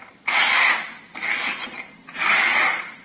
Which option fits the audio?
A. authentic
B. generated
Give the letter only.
A